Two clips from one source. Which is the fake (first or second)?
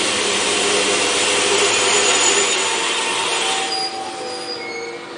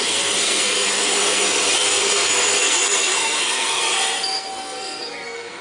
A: second